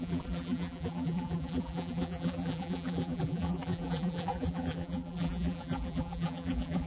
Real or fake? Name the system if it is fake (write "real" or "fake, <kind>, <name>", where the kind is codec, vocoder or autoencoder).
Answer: fake, vocoder, BigVGAN v2